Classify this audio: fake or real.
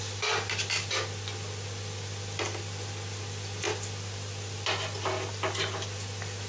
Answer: real